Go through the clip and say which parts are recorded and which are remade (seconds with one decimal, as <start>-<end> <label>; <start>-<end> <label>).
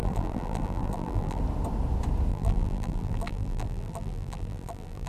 0.0-1.4 remade; 1.4-2.3 recorded; 2.3-5.1 remade